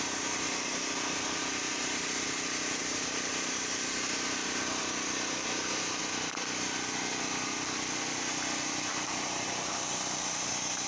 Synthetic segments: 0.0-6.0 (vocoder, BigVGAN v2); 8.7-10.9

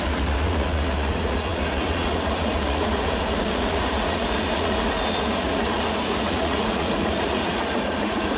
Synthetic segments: 0.0-8.4 (vocoder, Vocos)

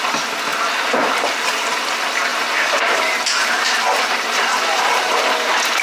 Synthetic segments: 2.3-5.8 (vocoder, BigVGAN v2)

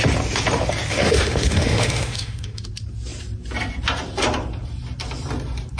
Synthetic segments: 0.9-2.6 (autoencoder, DAC-VAE)

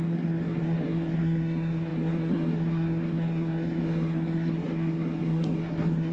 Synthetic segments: 0.0-6.1 (codec, SNAC)